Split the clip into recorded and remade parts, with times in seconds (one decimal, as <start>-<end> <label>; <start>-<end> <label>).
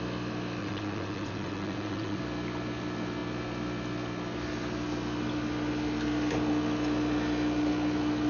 0.0-0.6 recorded; 0.6-2.2 remade; 2.2-8.3 recorded